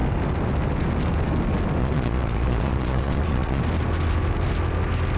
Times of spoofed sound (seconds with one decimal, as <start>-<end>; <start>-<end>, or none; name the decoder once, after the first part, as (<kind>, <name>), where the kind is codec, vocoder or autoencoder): 1.8-3.6 (vocoder, Vocos)